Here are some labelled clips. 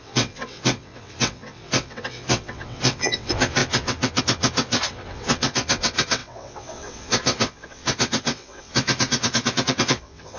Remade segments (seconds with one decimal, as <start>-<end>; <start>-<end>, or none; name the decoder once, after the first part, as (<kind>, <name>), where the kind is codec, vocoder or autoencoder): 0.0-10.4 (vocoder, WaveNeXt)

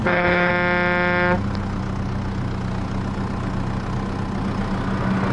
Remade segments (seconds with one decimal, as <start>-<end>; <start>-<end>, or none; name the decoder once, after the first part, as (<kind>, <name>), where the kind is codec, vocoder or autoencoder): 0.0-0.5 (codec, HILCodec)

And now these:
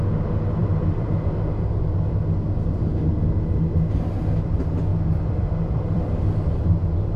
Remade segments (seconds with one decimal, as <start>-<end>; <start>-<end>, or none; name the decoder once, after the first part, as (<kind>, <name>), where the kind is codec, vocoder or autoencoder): 0.6-1.3 (vocoder, BigVGAN v2); 4.9-6.2

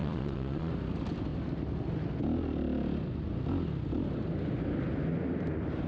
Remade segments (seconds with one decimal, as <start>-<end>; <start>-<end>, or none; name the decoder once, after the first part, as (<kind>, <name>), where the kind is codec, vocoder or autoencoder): 0.0-0.7 (vocoder, Vocos)

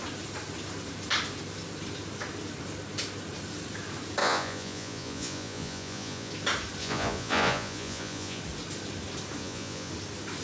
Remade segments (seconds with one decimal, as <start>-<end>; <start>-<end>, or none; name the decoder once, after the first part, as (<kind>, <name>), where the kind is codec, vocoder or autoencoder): 4.2-6.3 (vocoder, Vocos); 6.8-8.4; 9.4-9.9

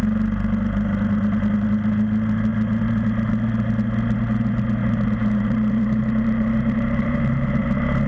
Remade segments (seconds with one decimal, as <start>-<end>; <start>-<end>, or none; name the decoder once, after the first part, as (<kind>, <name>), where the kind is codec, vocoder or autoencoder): 4.8-8.1 (vocoder, BigVGAN v2)

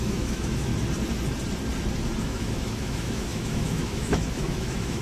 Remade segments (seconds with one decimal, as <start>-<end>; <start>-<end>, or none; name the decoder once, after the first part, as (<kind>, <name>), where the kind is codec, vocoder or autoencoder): 0.0-0.7 (autoencoder, DAC-VAE); 2.2-5.0